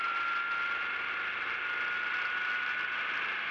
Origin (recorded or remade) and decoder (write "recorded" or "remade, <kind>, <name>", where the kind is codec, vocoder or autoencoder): recorded